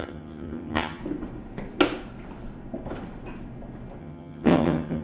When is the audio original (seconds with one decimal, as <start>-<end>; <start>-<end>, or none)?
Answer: 1.0-4.0